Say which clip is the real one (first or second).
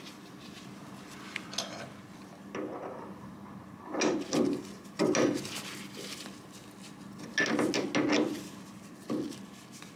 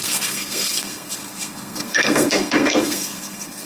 first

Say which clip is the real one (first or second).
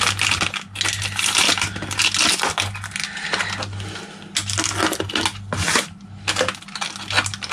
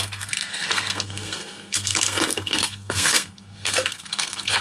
first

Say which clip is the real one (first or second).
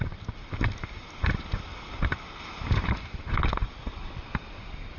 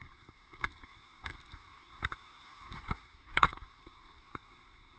first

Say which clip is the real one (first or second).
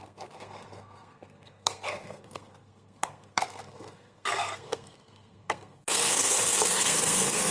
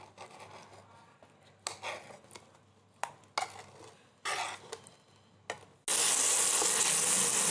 second